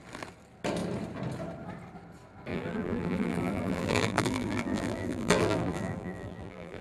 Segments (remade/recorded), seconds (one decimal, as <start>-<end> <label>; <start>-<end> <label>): 0.0-2.5 recorded; 2.5-6.8 remade